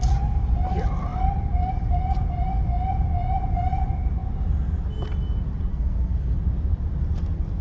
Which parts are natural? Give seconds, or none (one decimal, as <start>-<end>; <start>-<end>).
0.0-5.7; 6.4-7.6